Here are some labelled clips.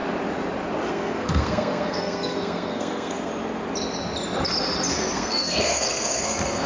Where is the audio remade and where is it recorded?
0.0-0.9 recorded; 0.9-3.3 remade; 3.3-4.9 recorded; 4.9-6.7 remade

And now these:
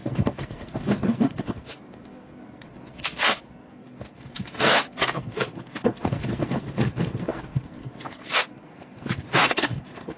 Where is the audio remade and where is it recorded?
0.0-10.2 remade

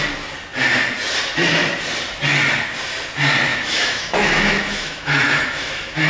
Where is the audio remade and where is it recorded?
0.0-3.5 recorded; 3.5-6.1 remade

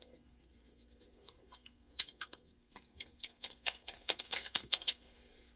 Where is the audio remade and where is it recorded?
0.0-5.6 remade

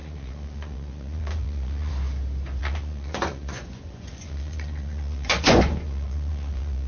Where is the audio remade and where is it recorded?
0.0-1.9 remade; 1.9-2.6 recorded; 2.6-6.9 remade

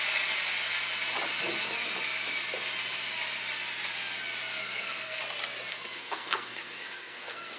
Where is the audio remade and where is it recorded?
0.0-4.6 recorded; 4.6-5.2 remade; 5.2-5.7 recorded; 5.7-7.6 remade

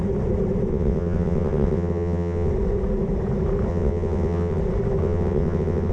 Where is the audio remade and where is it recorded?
0.0-0.7 recorded; 0.7-2.5 remade; 2.5-3.7 recorded; 3.7-4.6 remade; 4.6-5.0 recorded; 5.0-5.9 remade